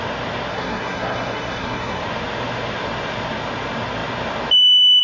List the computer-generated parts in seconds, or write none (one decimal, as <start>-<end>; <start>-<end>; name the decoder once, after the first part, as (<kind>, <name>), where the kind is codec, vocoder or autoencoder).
0.5-2.0 (codec, SNAC)